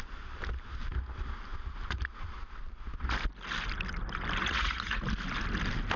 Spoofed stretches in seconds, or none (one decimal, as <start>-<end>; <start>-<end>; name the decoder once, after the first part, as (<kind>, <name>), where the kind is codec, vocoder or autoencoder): 4.4-5.0 (vocoder, Vocos)